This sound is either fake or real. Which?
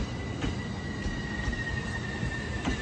real